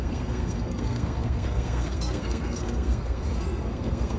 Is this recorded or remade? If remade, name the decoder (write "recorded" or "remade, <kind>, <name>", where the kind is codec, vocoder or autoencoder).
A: remade, codec, SNAC